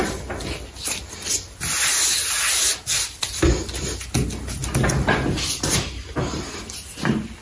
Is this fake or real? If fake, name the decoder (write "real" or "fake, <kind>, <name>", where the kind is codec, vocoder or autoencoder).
real